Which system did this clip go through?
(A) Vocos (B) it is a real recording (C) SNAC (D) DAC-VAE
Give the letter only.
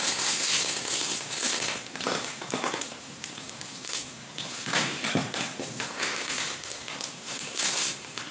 C